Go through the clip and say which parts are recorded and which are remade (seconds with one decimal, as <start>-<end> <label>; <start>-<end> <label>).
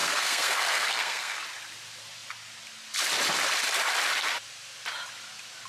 0.0-1.4 remade; 1.4-5.7 recorded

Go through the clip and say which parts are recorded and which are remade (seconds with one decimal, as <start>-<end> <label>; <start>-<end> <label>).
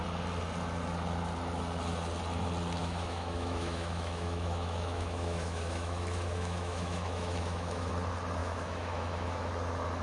0.0-2.8 recorded; 2.8-7.9 remade; 7.9-8.4 recorded; 8.4-9.5 remade; 9.5-10.0 recorded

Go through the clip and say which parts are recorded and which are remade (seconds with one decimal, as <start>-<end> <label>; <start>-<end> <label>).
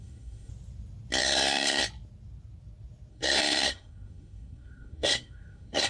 0.0-0.5 remade; 0.5-1.2 recorded; 1.2-1.8 remade; 1.8-3.1 recorded; 3.1-5.9 remade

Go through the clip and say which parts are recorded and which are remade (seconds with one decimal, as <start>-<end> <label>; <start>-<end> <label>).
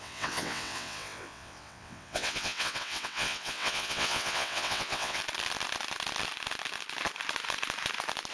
0.0-5.2 remade; 5.2-8.3 recorded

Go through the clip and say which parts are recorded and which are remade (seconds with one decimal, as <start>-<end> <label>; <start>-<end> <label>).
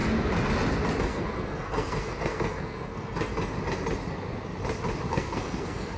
0.0-1.0 recorded; 1.0-3.3 remade; 3.3-5.1 recorded; 5.1-6.0 remade